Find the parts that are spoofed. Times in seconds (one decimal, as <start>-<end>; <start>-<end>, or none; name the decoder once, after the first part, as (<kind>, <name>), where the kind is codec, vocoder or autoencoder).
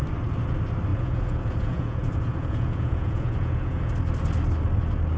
0.9-3.9 (vocoder, Vocos)